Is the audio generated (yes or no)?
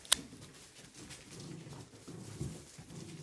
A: no